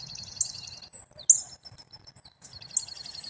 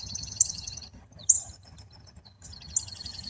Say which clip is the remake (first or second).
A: second